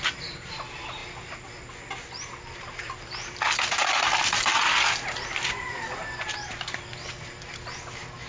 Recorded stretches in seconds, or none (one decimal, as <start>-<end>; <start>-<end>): 0.0-8.3